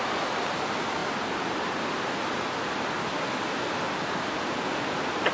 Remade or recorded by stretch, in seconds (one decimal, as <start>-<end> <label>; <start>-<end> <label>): 0.0-5.3 recorded